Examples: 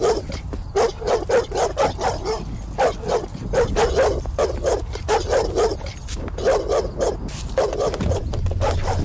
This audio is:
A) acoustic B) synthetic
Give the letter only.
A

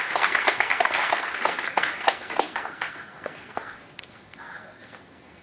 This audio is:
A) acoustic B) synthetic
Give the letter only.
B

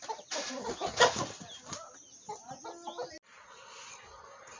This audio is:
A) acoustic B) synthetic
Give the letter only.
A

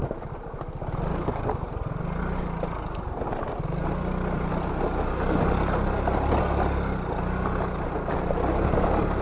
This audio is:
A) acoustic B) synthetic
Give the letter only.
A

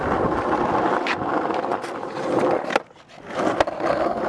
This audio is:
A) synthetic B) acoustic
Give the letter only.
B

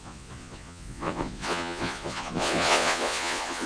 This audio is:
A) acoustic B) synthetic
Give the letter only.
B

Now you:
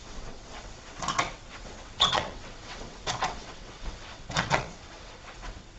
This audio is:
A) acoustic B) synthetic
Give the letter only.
B